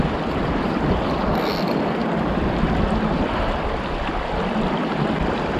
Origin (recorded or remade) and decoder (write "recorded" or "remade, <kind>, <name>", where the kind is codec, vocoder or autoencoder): recorded